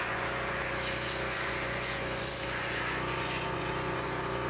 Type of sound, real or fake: fake